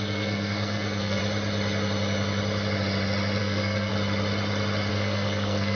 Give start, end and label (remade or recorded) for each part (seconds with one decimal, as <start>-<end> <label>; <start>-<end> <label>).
0.0-1.2 remade; 1.2-3.4 recorded; 3.4-3.9 remade; 3.9-4.9 recorded; 4.9-5.8 remade